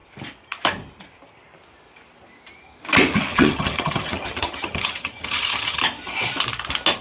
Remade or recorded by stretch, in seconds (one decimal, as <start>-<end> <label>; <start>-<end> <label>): 0.0-3.3 recorded; 3.3-5.8 remade; 5.8-7.0 recorded